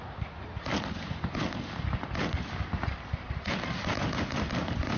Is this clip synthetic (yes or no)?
no